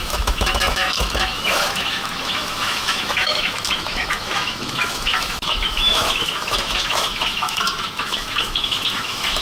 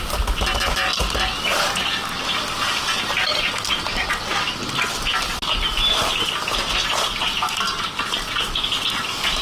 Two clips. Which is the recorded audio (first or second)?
second